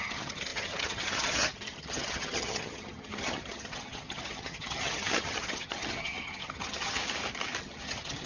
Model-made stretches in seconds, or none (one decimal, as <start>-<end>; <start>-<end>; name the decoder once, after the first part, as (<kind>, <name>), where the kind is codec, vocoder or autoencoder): 0.0-7.0 (vocoder, HiFi-GAN); 7.6-8.3